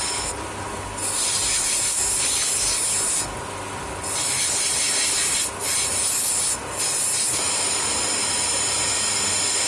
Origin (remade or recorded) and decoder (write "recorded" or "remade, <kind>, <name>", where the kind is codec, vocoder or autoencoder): recorded